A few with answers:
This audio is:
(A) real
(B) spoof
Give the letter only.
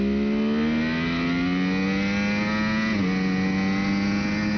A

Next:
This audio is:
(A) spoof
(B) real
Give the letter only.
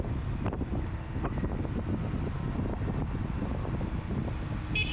B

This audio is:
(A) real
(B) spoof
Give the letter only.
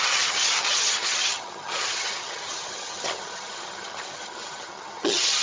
B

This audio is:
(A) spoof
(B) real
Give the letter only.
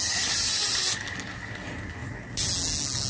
B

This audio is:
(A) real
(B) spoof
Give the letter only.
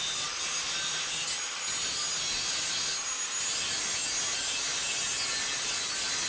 A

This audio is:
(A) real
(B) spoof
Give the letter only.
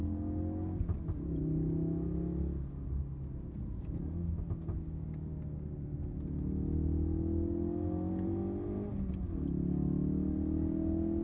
A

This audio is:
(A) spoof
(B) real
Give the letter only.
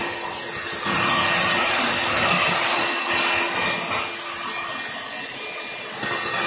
B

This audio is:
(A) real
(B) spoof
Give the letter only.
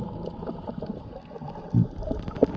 A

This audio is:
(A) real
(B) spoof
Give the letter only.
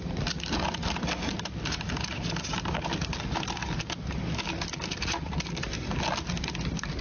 A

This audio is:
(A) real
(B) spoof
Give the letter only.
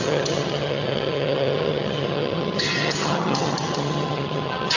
B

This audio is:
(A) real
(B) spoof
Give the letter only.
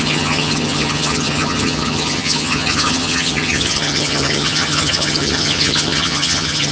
B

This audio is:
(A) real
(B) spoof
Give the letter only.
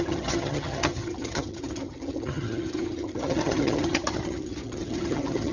B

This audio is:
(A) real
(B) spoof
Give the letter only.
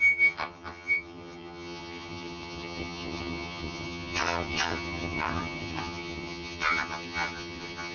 B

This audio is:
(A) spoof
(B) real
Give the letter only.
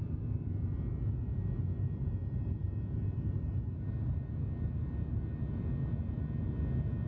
B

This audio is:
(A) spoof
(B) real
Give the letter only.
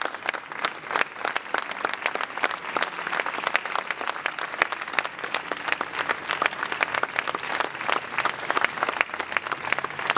B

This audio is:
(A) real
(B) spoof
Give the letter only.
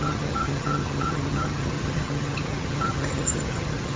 B